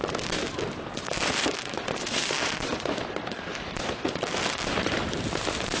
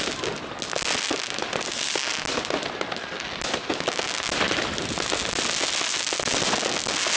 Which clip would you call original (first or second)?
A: second